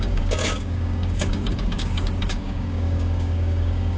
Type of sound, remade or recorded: remade